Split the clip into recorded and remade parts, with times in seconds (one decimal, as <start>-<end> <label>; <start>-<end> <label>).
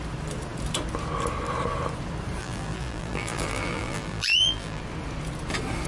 0.0-2.4 recorded; 2.4-4.8 remade; 4.8-5.9 recorded